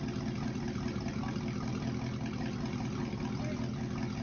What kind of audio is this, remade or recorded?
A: recorded